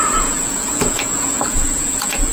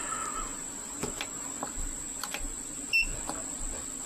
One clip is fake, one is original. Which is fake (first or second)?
first